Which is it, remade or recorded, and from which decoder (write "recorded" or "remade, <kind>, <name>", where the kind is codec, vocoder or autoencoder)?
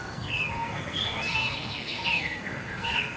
remade, codec, SNAC